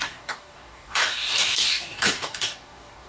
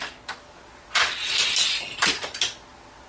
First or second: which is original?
second